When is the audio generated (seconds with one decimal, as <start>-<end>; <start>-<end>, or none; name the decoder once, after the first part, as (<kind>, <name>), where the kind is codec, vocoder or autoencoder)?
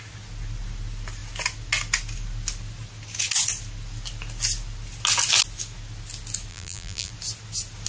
6.5-7.1 (vocoder, BigVGAN v2)